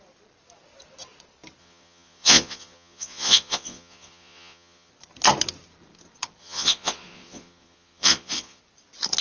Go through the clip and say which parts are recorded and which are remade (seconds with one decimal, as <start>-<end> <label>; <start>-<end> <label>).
0.0-1.6 recorded; 1.6-4.9 remade; 4.9-6.4 recorded; 6.4-8.6 remade; 8.6-9.2 recorded